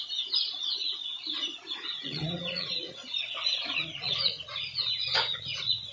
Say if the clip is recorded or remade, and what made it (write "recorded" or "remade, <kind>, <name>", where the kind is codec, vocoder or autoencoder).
remade, vocoder, Vocos